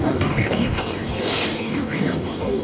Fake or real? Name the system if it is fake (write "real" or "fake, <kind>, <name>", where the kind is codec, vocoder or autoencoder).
fake, codec, DAC